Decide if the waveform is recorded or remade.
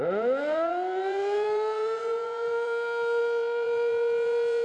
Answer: remade